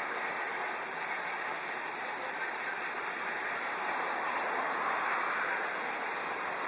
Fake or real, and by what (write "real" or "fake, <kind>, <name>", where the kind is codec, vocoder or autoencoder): real